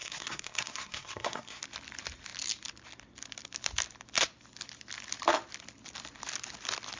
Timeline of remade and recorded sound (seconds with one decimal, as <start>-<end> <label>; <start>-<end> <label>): 0.0-1.6 remade; 1.6-7.0 recorded

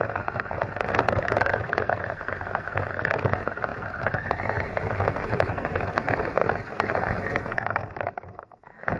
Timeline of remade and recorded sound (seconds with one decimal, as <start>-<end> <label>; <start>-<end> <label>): 0.0-9.0 remade

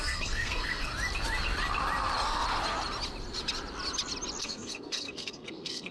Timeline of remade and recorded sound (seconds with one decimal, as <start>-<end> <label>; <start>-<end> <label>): 0.0-0.9 remade; 0.9-4.4 recorded; 4.4-5.9 remade